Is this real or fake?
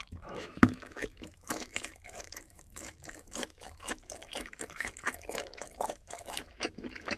fake